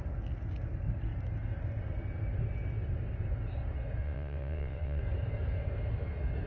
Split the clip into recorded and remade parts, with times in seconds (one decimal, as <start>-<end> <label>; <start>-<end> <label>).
0.0-4.0 recorded; 4.0-5.0 remade; 5.0-6.5 recorded